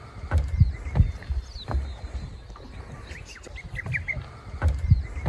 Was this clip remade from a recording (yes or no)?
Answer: no